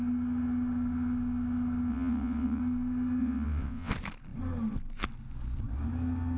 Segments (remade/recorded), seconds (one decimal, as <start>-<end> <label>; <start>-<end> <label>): 0.0-1.9 recorded; 1.9-2.6 remade; 2.6-3.2 recorded; 3.2-3.9 remade; 3.9-6.4 recorded